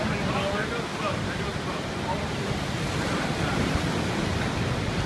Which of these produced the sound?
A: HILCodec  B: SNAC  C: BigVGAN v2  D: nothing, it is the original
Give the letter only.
D